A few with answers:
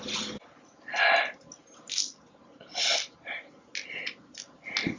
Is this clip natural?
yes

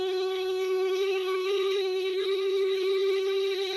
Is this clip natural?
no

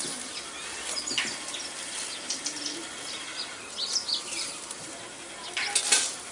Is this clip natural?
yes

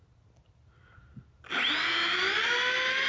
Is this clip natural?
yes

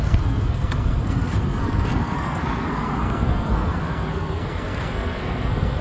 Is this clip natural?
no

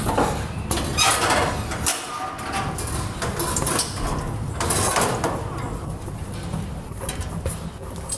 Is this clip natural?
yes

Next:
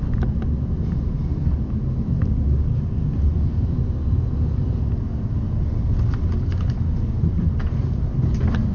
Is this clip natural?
yes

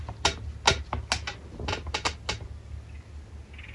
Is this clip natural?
yes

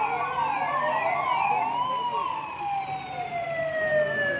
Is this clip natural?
yes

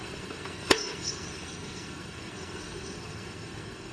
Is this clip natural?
no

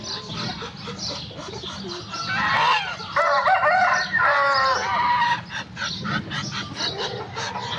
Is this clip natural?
yes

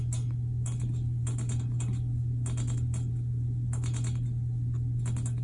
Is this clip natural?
yes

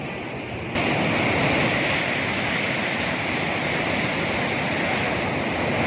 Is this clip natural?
yes